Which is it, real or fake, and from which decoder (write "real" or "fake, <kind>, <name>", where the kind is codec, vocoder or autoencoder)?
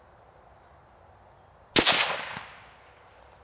real